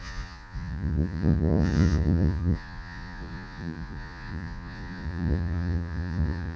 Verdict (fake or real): fake